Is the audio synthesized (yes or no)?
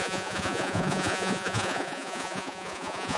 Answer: yes